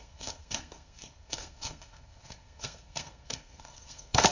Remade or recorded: remade